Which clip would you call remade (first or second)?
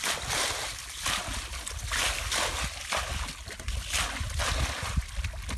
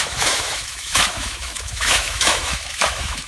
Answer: second